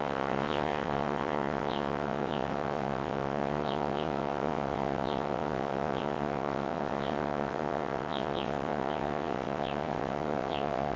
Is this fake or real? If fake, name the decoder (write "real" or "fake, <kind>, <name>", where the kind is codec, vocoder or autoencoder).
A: fake, vocoder, WaveNeXt